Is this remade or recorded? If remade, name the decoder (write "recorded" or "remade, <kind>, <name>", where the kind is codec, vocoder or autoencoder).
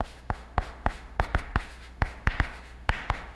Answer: remade, autoencoder, DAC-VAE